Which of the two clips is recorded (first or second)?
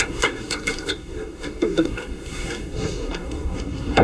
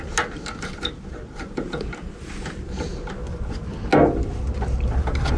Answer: second